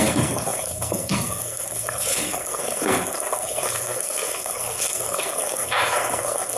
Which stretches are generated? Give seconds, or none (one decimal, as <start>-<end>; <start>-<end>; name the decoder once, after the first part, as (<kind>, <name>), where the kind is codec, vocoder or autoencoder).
0.0-6.6 (codec, SNAC)

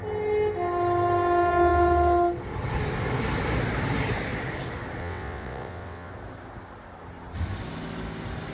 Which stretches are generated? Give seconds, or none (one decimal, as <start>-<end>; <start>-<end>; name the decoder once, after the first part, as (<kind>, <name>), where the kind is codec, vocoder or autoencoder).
5.0-6.1 (vocoder, WaveNeXt)

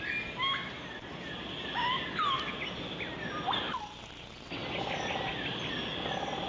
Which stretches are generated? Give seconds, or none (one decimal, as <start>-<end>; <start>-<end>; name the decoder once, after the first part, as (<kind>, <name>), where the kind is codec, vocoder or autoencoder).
none